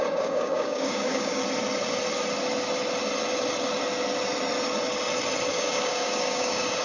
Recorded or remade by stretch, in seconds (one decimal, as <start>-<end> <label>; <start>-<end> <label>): 0.0-1.4 remade; 1.4-5.5 recorded; 5.5-6.8 remade